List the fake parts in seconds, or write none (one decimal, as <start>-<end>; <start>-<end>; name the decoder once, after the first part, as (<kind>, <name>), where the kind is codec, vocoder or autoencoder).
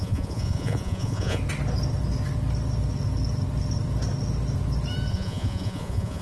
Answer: 0.0-1.4 (vocoder, Vocos); 5.1-6.2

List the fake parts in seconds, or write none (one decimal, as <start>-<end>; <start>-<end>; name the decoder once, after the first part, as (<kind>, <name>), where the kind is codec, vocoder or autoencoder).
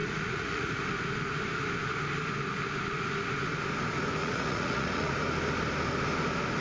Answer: 0.0-0.8 (vocoder, Vocos); 4.2-5.1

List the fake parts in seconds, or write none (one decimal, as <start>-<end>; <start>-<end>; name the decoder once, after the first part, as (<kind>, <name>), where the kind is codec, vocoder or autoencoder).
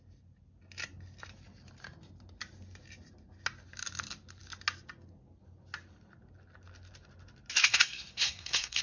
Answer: 7.6-8.8 (codec, SNAC)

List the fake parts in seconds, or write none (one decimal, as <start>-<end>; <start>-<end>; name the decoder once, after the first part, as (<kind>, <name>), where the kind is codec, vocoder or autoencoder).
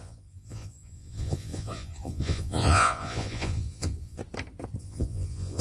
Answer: 0.0-4.2 (vocoder, Vocos); 4.8-5.6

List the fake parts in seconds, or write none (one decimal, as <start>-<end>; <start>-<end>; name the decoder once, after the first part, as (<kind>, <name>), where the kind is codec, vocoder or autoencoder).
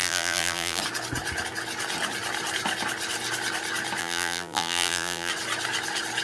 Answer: 0.0-0.8 (vocoder, BigVGAN v2); 4.0-5.3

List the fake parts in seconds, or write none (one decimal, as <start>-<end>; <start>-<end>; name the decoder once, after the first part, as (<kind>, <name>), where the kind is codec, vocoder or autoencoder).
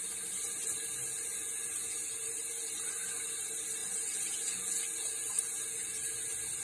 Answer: 1.0-2.0 (vocoder, Vocos); 3.8-5.9